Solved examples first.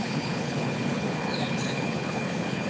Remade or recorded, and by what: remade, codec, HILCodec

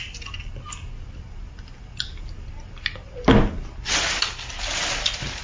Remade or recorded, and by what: recorded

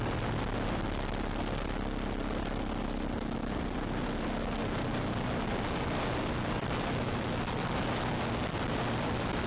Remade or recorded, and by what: recorded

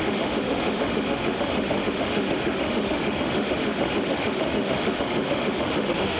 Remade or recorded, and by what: remade, autoencoder, DAC-VAE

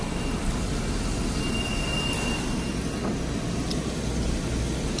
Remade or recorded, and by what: recorded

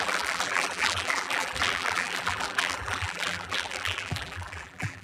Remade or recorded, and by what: remade, vocoder, BigVGAN v2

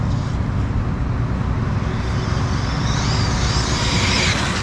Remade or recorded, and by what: recorded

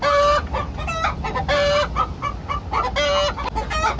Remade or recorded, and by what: recorded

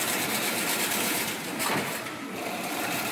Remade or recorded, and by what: recorded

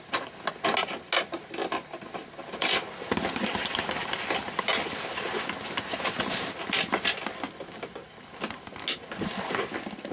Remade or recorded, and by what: recorded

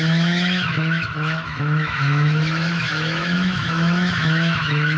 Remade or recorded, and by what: remade, autoencoder, DAC-VAE